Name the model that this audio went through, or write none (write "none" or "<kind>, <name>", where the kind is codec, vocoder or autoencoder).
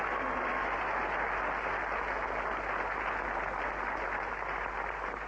none